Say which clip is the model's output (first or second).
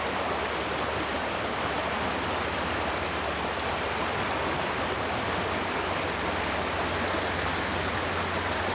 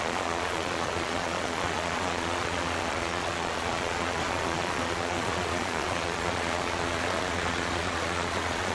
second